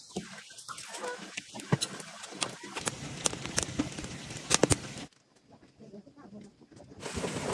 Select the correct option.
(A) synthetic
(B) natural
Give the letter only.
B